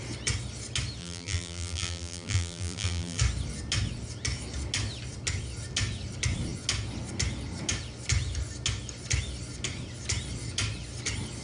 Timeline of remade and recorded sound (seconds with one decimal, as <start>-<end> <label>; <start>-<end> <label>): 0.0-1.0 recorded; 1.0-3.2 remade; 3.2-11.4 recorded

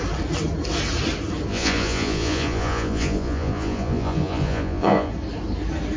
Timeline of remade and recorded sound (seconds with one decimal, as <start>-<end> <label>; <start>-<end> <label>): 0.0-1.5 recorded; 1.5-5.1 remade; 5.1-6.0 recorded

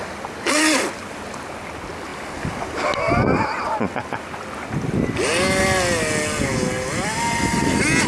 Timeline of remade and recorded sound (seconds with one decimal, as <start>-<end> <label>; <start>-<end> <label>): 0.0-8.1 recorded

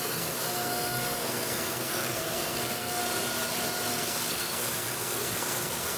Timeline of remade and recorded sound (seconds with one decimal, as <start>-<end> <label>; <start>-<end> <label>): 0.0-3.0 remade; 3.0-3.9 recorded; 3.9-6.0 remade

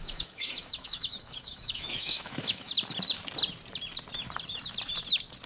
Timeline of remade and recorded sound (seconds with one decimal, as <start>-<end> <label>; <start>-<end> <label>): 0.0-2.7 remade; 2.7-5.5 recorded

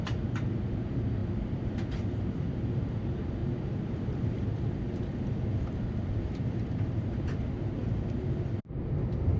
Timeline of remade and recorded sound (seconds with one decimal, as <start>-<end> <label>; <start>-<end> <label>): 0.0-3.4 recorded; 3.4-4.0 remade; 4.0-9.4 recorded

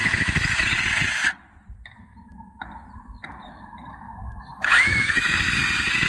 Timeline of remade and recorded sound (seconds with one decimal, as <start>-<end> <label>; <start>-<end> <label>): 0.0-4.5 recorded; 4.5-5.4 remade; 5.4-6.1 recorded